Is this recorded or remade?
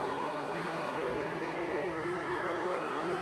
remade